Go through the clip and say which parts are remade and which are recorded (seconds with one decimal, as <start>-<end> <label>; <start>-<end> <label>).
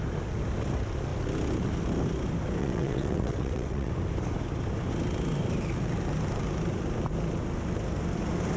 0.0-2.6 recorded; 2.6-3.9 remade; 3.9-8.6 recorded